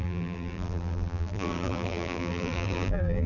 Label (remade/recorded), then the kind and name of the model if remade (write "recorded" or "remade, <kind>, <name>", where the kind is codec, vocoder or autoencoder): remade, vocoder, BigVGAN v2